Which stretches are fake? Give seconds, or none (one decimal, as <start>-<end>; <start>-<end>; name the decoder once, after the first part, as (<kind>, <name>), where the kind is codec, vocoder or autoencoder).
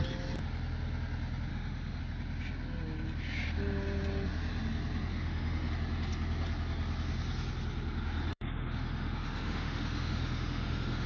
1.5-2.0 (autoencoder, DAC-VAE); 5.1-5.7; 8.3-11.1